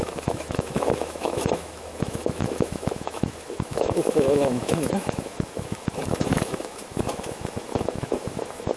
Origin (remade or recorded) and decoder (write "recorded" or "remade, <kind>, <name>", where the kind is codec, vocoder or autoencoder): remade, autoencoder, DAC-VAE